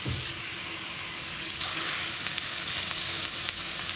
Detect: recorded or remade remade